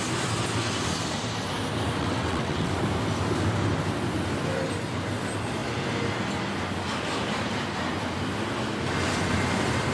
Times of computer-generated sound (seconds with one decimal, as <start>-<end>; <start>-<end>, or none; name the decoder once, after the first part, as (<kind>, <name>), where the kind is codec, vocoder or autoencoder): 2.0-2.7 (vocoder, WaveNeXt)